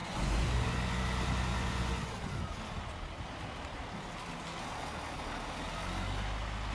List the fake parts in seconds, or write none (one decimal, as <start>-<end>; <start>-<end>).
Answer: 0.0-1.0; 1.5-2.1